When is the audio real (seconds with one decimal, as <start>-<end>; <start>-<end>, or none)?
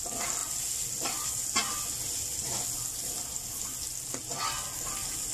0.0-5.3